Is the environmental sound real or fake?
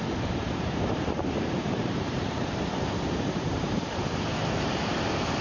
fake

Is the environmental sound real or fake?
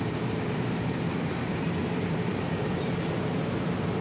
fake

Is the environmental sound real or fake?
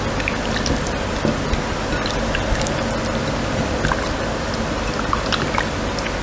real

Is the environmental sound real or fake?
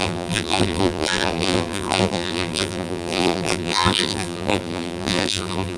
fake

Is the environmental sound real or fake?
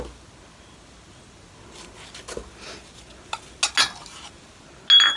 real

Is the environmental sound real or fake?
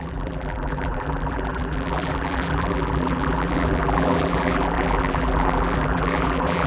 fake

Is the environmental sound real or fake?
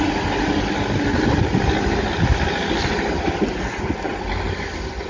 real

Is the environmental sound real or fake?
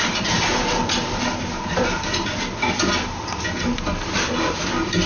fake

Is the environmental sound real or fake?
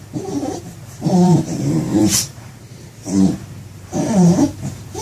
fake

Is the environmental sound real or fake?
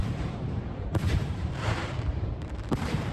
fake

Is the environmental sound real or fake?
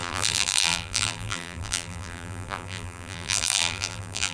fake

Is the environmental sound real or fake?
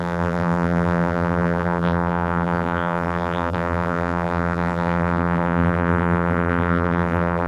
fake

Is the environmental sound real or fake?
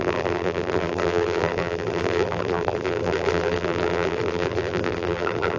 fake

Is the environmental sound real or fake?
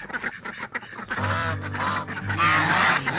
fake